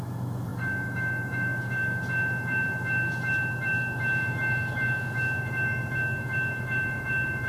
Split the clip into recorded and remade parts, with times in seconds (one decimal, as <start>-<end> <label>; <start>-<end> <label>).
0.0-7.5 remade